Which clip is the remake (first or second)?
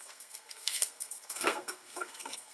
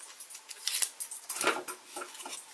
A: first